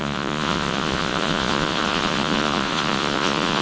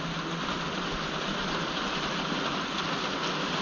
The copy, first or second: first